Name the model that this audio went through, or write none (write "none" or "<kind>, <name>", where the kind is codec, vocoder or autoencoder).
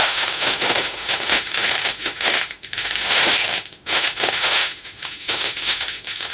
autoencoder, DAC-VAE